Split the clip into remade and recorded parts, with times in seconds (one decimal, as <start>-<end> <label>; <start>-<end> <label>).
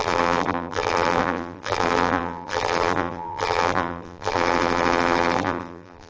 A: 0.0-6.1 remade